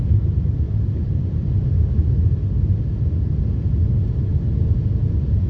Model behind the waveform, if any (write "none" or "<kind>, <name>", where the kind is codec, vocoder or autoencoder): none